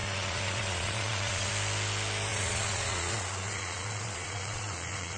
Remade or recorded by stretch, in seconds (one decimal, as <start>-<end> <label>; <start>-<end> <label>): 0.0-1.5 remade; 1.5-2.3 recorded; 2.3-5.2 remade